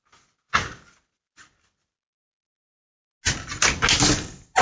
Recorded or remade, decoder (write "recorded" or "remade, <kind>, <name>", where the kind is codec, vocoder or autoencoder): recorded